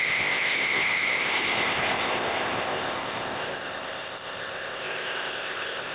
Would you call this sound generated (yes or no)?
yes